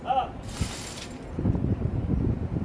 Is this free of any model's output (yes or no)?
no